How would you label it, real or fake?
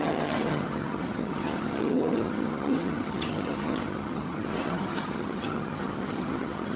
fake